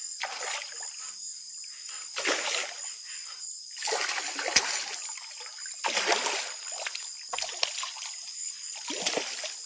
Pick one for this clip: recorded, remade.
recorded